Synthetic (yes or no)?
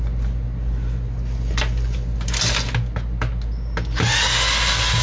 no